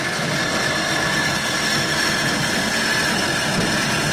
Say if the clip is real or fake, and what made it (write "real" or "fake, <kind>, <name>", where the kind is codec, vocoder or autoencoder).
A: real